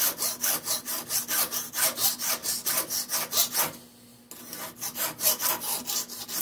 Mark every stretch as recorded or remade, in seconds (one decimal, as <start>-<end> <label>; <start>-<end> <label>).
0.0-6.4 recorded